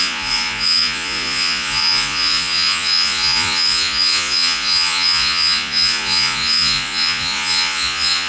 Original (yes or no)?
no